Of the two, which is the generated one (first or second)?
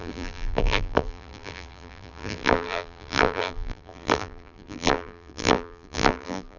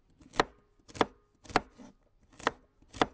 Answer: first